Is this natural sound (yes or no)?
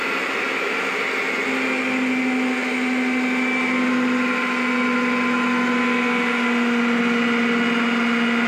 yes